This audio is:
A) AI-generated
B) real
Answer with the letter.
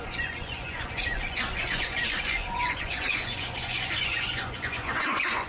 A